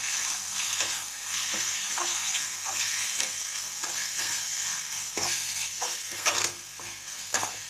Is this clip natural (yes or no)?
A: no